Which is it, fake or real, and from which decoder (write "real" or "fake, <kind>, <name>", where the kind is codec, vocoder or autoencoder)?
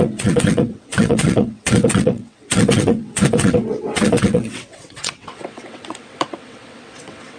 fake, vocoder, WaveNeXt